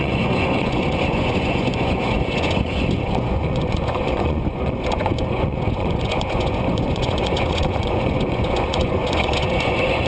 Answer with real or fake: fake